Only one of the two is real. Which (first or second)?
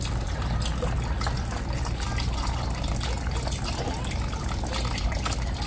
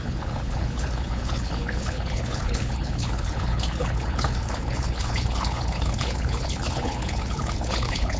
first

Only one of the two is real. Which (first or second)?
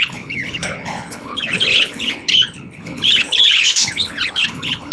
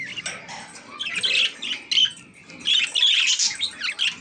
second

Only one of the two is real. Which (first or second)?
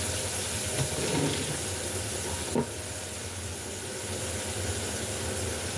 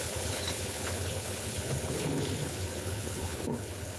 first